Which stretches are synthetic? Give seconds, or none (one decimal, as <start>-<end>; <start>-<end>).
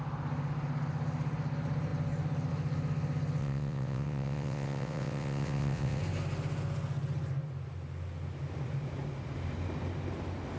3.4-6.0